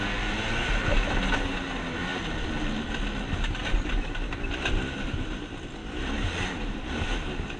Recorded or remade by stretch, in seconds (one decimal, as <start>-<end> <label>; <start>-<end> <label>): 0.0-7.6 recorded